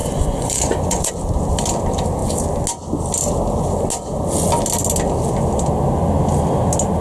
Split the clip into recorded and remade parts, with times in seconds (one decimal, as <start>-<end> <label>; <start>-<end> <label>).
0.0-1.1 remade; 1.1-7.0 recorded